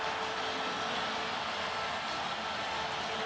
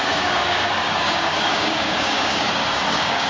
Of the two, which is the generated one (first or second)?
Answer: second